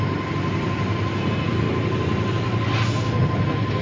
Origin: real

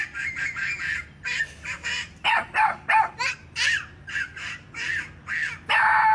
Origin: real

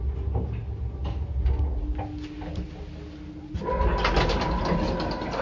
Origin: real